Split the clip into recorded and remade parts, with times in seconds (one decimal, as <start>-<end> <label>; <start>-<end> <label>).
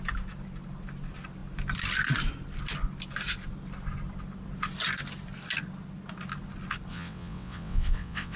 0.0-6.9 recorded; 6.9-8.4 remade